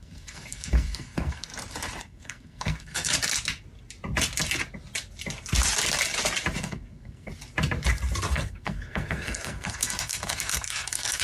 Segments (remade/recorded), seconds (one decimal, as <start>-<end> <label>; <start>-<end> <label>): 0.0-1.5 remade; 1.5-2.0 recorded; 2.0-3.1 remade; 3.1-6.6 recorded; 6.6-7.3 remade; 7.3-8.3 recorded; 8.3-11.2 remade